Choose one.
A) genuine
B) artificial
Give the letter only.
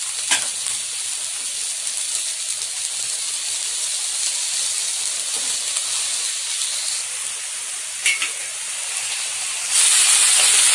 A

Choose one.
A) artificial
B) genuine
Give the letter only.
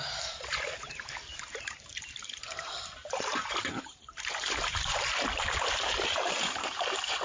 A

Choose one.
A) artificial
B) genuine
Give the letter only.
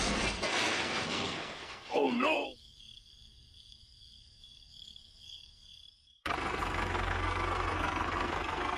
A